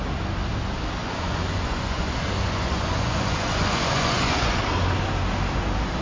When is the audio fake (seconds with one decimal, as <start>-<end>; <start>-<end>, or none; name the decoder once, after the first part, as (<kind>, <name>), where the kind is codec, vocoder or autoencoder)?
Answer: 1.0-4.6 (vocoder, Vocos)